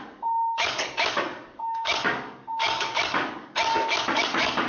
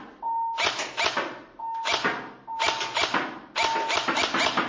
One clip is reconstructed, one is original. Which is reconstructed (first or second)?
first